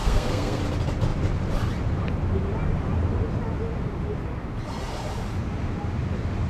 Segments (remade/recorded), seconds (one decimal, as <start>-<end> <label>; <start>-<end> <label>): 0.0-0.6 remade; 0.6-6.5 recorded